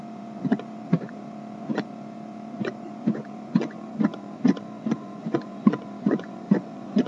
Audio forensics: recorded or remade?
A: remade